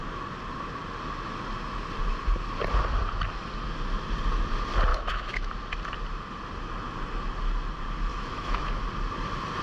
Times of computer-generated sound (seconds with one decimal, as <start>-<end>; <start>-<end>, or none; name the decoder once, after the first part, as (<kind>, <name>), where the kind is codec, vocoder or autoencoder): 4.9-5.5 (autoencoder, DAC-VAE); 8.1-8.8